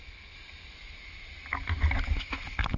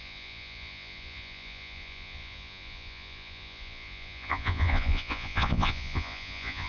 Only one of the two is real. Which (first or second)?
first